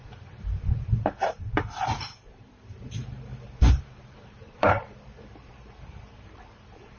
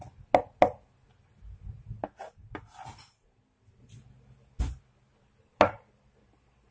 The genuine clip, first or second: second